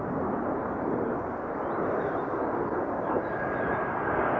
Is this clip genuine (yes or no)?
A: yes